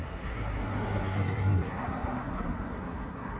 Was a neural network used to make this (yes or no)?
yes